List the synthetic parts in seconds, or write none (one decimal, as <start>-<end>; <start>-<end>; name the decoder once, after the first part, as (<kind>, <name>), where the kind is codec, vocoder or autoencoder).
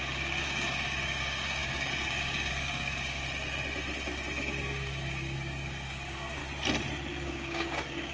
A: 0.0-3.2 (codec, DAC); 4.6-6.4; 7.1-8.1